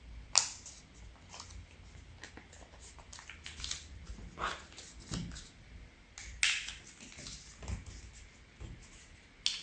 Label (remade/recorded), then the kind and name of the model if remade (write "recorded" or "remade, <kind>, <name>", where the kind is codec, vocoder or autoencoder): recorded